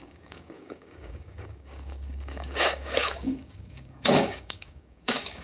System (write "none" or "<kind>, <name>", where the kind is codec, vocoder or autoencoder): codec, DAC